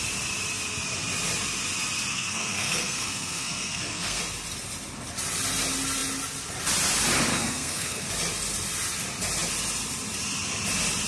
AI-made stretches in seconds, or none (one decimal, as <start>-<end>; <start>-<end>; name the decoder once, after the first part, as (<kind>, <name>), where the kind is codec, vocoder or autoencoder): 2.1-4.2 (codec, SNAC); 7.3-8.1